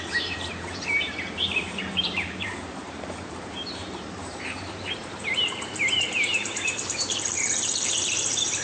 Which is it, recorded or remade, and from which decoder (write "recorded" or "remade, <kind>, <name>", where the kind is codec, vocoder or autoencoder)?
remade, vocoder, BigVGAN v2